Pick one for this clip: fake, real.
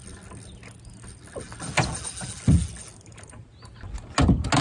real